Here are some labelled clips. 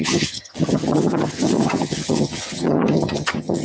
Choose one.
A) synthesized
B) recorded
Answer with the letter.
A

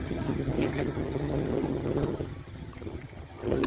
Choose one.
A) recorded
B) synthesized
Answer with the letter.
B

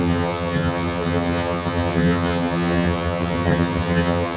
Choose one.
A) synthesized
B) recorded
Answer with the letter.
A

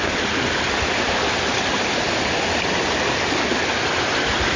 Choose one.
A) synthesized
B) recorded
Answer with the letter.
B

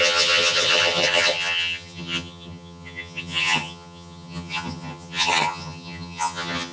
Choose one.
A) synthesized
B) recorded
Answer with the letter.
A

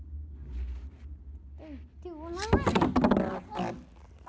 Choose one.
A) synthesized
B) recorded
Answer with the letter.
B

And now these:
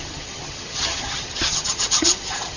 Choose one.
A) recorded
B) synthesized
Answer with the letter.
B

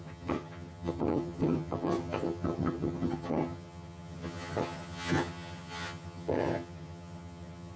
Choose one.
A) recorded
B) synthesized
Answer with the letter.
B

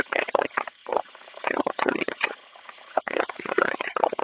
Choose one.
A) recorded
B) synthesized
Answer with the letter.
B